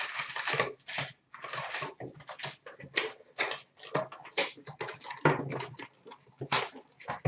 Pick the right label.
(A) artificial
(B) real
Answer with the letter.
B